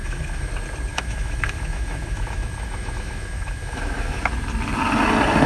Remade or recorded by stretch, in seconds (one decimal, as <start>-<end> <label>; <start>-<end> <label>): 0.0-0.5 remade; 0.5-0.9 recorded; 0.9-4.2 remade; 4.2-5.5 recorded